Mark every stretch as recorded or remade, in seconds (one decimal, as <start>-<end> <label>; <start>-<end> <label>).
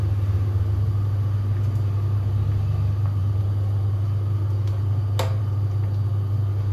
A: 0.0-6.7 recorded